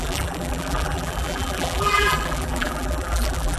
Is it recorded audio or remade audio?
remade